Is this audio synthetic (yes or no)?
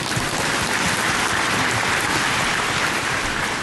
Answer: no